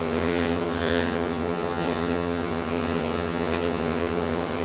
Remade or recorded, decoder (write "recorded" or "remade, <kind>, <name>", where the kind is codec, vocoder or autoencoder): remade, vocoder, HiFi-GAN